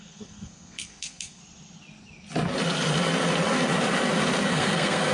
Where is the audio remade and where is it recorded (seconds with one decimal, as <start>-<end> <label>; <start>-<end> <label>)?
0.0-1.4 remade; 1.4-4.5 recorded; 4.5-5.1 remade